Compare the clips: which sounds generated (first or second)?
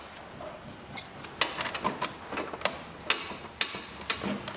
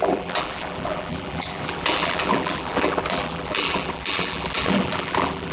second